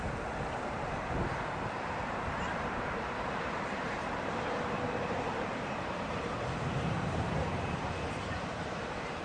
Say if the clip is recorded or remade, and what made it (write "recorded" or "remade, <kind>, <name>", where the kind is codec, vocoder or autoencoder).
remade, vocoder, BigVGAN v2